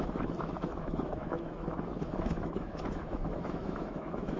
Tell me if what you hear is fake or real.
fake